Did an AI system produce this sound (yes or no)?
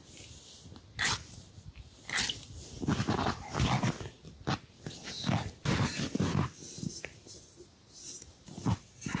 no